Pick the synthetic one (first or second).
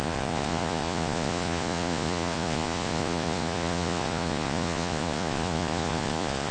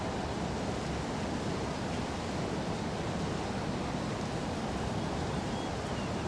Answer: first